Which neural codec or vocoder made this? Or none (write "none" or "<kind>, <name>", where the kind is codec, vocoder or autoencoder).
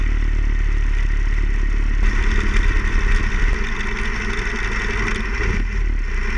none